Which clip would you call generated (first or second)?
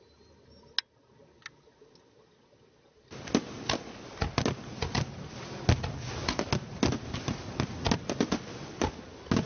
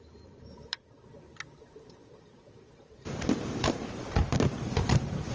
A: second